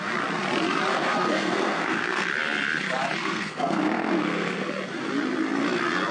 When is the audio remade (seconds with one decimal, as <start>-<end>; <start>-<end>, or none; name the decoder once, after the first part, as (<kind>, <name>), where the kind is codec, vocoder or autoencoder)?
0.9-2.3 (codec, SNAC); 3.2-4.7